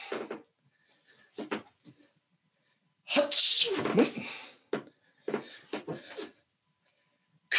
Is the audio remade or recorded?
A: recorded